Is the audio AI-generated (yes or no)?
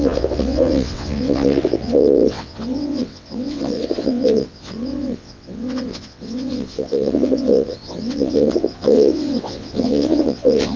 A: yes